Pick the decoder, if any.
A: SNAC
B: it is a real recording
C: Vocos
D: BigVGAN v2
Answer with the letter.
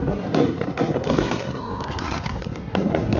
A